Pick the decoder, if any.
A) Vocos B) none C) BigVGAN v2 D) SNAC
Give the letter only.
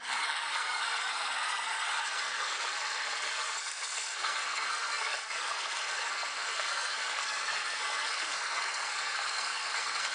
D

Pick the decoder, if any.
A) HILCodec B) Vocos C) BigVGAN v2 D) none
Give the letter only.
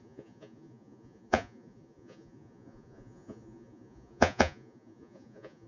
B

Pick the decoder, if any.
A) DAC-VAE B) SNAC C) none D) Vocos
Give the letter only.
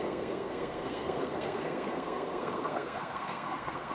B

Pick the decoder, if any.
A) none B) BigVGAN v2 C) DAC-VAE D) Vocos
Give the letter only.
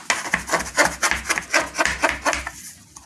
A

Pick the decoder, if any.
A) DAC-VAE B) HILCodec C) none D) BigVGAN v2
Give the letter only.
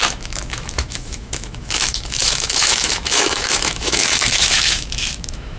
A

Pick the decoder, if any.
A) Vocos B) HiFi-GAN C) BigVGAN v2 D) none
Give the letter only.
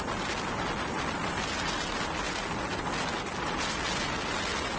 D